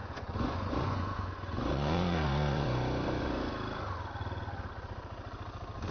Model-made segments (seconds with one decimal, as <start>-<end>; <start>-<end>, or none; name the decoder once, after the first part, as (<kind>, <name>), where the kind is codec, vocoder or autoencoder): 0.0-3.5 (vocoder, Vocos)